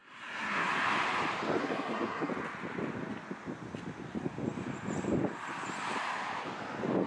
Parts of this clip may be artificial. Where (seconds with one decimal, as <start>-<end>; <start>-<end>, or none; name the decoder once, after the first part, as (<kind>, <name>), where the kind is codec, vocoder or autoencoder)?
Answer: 0.0-0.7 (codec, SNAC); 1.6-2.3